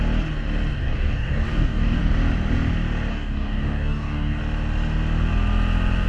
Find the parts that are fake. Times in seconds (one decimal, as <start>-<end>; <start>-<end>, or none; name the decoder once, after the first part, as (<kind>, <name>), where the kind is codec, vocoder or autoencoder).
0.8-2.0 (codec, DAC); 3.1-4.4